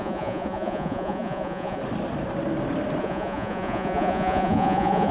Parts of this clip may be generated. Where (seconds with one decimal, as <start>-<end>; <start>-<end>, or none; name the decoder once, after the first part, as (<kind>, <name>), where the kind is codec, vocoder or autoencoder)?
0.0-1.8 (vocoder, Vocos); 3.0-5.1